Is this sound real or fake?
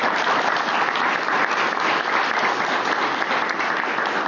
real